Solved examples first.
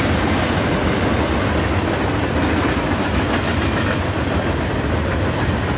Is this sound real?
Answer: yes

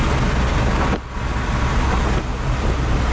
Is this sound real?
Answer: yes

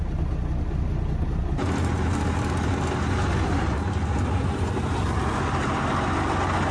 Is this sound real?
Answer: yes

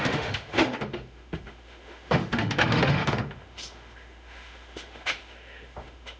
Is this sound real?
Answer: no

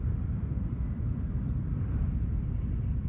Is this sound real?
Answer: no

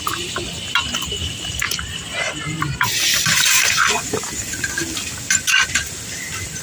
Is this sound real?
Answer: yes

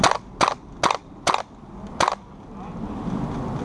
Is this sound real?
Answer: yes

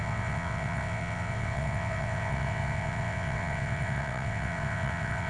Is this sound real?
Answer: no